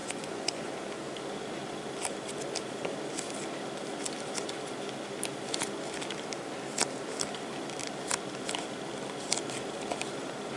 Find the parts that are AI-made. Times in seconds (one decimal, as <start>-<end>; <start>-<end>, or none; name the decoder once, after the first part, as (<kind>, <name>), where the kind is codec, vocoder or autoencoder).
0.0-0.7 (vocoder, Vocos)